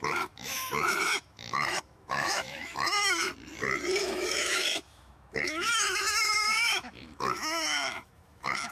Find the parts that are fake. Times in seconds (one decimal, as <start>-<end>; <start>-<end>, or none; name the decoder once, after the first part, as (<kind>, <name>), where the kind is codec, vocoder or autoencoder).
0.0-3.3 (autoencoder, DAC-VAE); 4.0-8.7